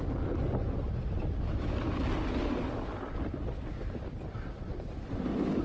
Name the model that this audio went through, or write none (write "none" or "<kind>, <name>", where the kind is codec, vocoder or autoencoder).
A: none